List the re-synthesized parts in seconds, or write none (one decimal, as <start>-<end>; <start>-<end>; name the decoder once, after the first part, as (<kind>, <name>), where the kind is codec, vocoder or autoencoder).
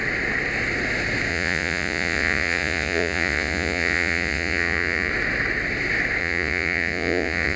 1.3-5.1 (vocoder, Vocos); 6.2-7.6